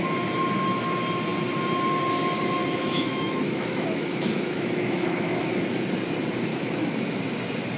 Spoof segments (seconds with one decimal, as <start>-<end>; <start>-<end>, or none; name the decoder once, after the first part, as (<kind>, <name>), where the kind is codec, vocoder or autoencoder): 2.6-5.5 (autoencoder, DAC-VAE); 6.5-7.2